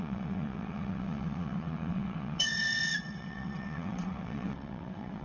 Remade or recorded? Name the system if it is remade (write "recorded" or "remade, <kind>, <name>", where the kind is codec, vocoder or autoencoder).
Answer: remade, vocoder, WaveNeXt